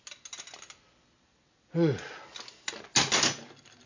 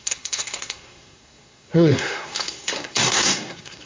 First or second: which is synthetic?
second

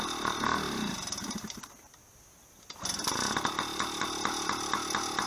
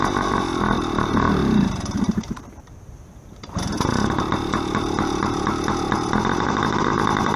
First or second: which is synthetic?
second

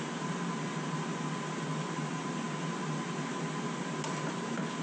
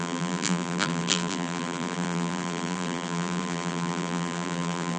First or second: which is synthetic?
second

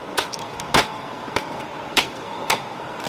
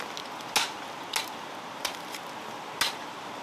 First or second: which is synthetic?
first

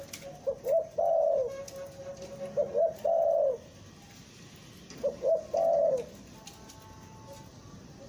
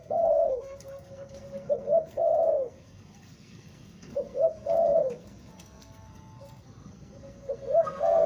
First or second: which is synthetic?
second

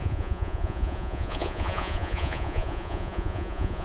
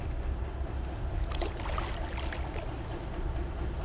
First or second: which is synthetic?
first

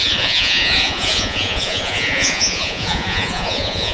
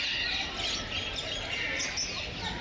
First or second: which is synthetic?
first